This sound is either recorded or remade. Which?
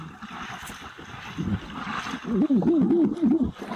recorded